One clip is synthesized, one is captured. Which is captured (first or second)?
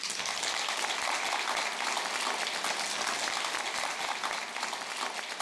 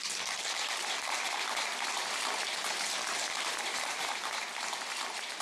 first